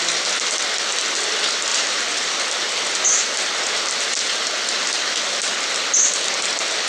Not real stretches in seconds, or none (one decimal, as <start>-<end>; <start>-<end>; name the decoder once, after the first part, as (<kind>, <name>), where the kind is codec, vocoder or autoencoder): 1.7-2.4 (vocoder, BigVGAN v2)